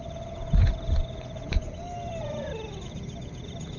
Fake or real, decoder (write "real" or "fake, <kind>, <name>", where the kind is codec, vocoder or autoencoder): real